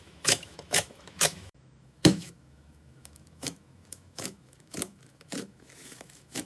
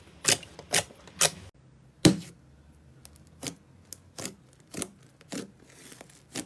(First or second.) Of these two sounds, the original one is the second